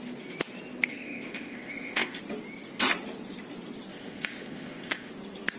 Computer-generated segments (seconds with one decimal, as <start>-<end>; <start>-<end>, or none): 0.9-2.2; 3.9-5.1